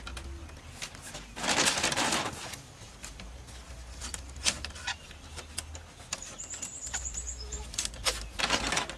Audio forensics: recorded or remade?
recorded